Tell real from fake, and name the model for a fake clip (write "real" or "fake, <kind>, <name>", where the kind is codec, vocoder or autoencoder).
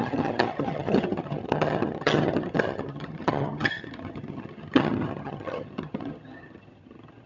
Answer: fake, vocoder, HiFi-GAN